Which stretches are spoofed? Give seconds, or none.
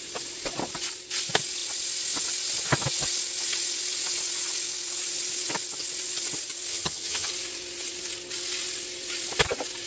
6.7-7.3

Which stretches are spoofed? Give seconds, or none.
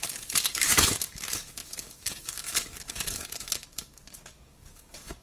0.0-5.2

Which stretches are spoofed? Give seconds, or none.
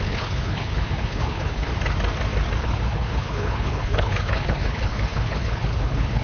0.0-1.7; 2.6-6.2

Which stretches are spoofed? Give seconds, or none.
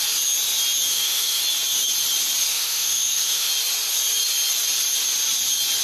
0.9-1.4; 2.5-3.5